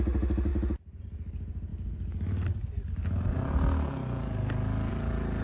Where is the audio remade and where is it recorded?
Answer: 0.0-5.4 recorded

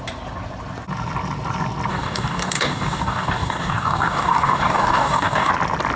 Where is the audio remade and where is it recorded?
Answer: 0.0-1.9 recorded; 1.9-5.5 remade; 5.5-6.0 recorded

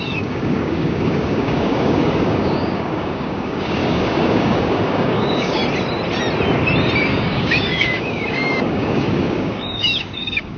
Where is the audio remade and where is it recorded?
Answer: 0.0-5.6 remade; 5.6-7.2 recorded; 7.2-10.6 remade

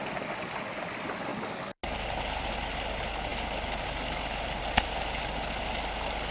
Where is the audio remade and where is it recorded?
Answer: 0.0-6.3 recorded